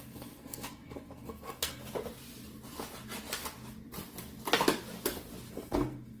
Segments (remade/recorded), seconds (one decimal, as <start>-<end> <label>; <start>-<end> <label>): 0.0-1.8 remade; 1.8-5.5 recorded; 5.5-6.2 remade